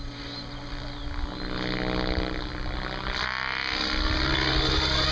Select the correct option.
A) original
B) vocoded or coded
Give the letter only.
A